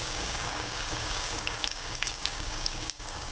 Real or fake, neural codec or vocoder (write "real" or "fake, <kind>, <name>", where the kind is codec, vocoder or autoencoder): fake, codec, DAC